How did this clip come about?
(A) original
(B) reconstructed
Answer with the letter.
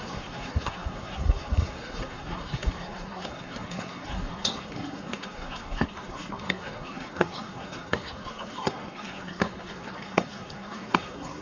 B